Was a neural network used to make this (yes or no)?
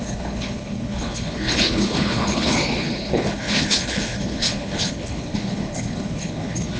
yes